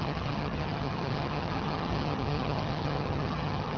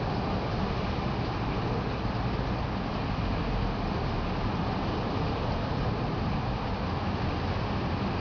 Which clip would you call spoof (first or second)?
first